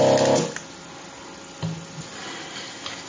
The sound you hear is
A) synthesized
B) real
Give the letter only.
B